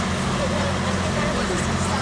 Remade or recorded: recorded